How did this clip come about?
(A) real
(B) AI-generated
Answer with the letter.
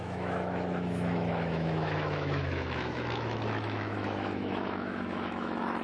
B